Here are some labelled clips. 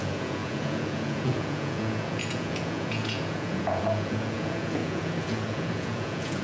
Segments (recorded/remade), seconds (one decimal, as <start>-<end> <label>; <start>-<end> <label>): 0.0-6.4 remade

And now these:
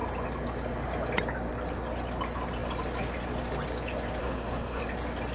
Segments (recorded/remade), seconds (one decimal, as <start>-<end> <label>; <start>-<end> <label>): 0.0-4.2 recorded; 4.2-4.8 remade; 4.8-5.3 recorded

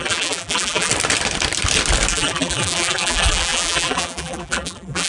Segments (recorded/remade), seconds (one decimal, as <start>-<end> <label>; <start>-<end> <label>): 0.0-0.9 remade; 0.9-2.1 recorded; 2.1-5.1 remade

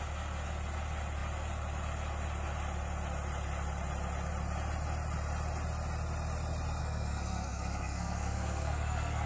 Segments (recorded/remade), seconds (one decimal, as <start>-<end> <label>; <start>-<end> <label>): 0.0-6.8 recorded; 6.8-9.3 remade

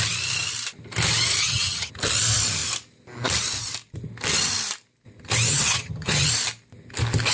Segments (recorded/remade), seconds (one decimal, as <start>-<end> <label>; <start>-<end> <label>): 0.0-1.4 recorded; 1.4-1.9 remade; 1.9-5.5 recorded; 5.5-6.3 remade; 6.3-7.3 recorded